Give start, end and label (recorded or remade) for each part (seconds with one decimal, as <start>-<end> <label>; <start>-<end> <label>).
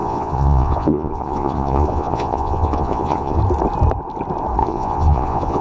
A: 0.0-3.4 remade; 3.4-4.6 recorded; 4.6-5.6 remade